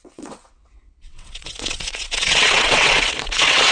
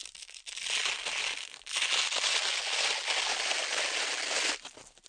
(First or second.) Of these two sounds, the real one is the second